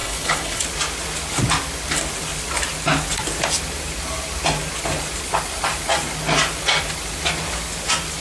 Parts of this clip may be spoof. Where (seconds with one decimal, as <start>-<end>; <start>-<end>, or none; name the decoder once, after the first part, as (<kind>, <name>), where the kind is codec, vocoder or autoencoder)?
0.0-0.6 (codec, HILCodec)